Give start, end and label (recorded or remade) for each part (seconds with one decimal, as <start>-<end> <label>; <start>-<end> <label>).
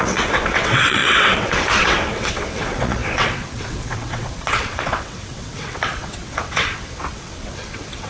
0.0-8.1 remade